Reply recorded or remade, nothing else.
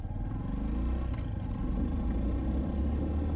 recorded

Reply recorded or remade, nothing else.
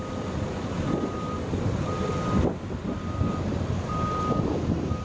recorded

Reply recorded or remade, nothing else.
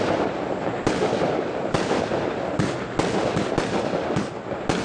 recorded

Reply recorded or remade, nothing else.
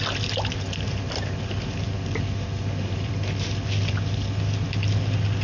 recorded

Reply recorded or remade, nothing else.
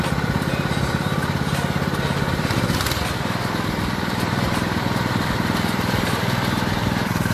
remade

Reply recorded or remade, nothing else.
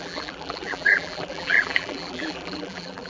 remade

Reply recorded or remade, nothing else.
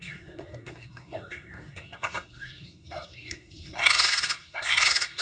remade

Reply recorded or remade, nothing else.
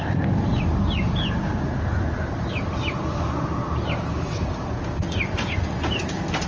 recorded